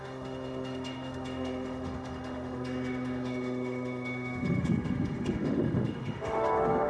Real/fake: fake